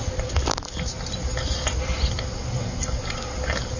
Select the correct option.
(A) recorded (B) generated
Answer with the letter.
A